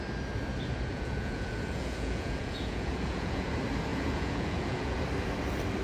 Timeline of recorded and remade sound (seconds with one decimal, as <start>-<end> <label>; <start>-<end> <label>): 0.0-0.9 recorded; 0.9-3.5 remade; 3.5-3.9 recorded; 3.9-5.0 remade; 5.0-5.8 recorded